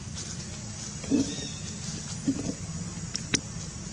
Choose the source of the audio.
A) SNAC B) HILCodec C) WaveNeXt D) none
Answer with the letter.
D